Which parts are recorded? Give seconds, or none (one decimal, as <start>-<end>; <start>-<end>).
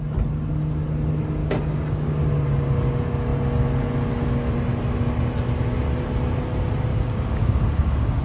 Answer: 0.0-1.4; 2.2-6.9